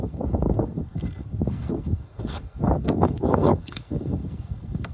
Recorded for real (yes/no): no